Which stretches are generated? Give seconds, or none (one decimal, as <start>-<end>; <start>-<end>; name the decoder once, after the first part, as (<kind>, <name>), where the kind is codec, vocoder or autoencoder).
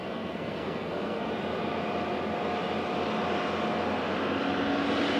0.0-1.3 (codec, SNAC)